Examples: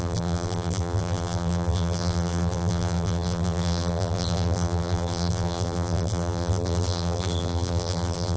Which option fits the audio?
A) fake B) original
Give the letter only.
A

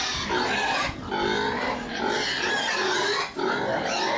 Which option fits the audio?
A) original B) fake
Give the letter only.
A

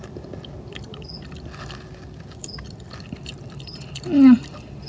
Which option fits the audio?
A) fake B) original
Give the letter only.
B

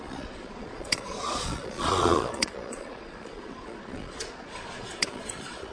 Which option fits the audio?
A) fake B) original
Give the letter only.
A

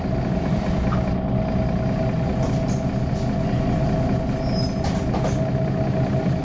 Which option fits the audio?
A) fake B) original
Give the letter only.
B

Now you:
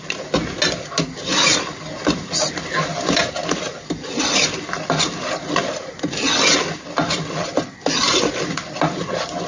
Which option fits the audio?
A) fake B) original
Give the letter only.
B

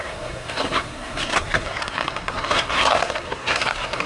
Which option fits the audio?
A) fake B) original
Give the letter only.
A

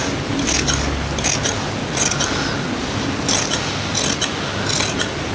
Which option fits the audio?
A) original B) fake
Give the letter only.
A